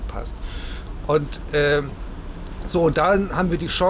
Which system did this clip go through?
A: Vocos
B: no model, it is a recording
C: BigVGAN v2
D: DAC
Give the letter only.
B